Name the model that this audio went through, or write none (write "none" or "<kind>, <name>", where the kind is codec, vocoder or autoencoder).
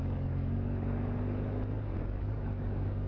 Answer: codec, DAC